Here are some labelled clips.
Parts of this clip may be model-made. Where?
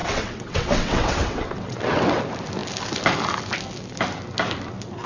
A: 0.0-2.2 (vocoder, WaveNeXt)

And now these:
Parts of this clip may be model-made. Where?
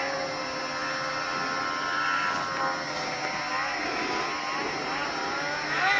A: none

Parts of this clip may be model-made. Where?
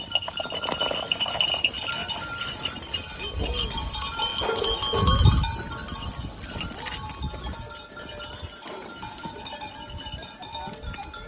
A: none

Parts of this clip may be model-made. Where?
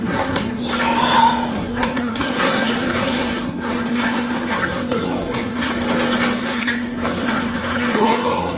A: 0.0-0.6 (codec, SNAC); 1.5-5.7; 6.4-8.6